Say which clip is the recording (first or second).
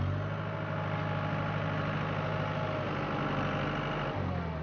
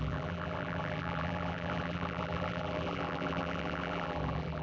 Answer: first